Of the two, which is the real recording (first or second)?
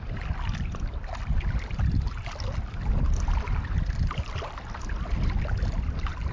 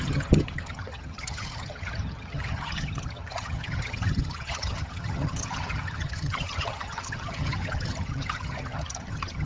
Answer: first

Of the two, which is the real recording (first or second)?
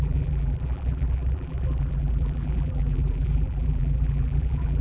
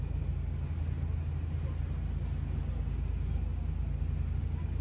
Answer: second